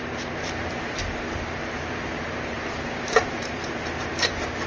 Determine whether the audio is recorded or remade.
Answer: remade